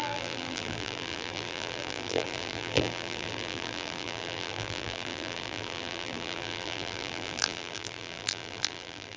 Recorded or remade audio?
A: remade